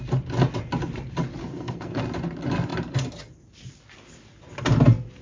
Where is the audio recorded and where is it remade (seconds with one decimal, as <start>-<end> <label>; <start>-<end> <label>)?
0.0-1.4 recorded; 1.4-2.0 remade; 2.0-5.2 recorded